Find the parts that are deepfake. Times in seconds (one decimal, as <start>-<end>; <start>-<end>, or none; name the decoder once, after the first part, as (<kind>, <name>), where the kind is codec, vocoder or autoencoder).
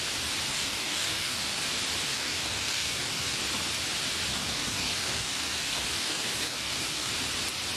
0.5-1.6 (codec, DAC); 2.1-3.4; 4.3-7.1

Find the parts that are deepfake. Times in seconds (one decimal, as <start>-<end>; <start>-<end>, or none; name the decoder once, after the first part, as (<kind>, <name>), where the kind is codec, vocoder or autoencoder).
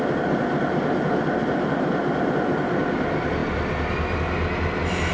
none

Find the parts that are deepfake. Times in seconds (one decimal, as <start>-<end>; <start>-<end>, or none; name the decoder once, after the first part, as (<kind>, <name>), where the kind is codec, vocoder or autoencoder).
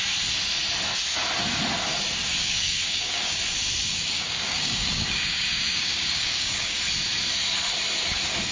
2.4-3.4 (codec, DAC); 3.8-6.8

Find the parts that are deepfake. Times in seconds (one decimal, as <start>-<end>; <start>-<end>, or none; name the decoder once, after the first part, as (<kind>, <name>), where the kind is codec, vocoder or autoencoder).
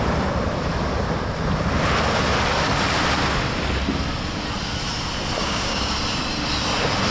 5.4-5.9 (codec, DAC)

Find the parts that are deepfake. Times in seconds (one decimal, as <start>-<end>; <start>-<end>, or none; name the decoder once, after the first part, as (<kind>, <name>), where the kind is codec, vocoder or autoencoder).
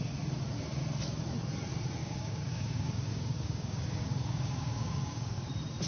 2.0-5.5 (codec, DAC)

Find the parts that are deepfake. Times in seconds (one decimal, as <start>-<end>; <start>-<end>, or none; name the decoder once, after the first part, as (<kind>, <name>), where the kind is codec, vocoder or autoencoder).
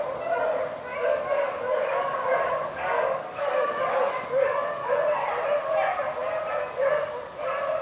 0.9-4.9 (codec, DAC)